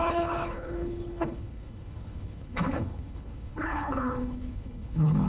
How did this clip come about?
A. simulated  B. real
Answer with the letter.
A